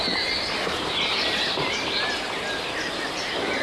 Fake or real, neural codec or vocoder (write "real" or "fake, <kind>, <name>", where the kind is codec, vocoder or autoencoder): real